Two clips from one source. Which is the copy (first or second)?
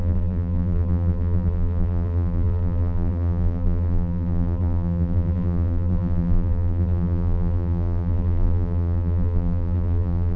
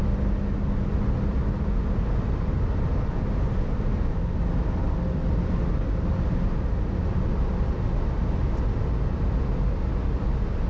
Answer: first